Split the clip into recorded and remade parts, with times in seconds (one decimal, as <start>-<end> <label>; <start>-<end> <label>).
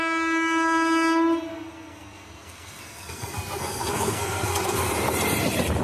0.0-1.5 recorded; 1.5-4.9 remade; 4.9-5.8 recorded